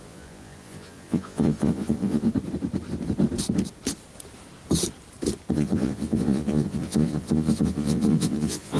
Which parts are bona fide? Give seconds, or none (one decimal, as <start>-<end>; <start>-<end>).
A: 2.3-5.5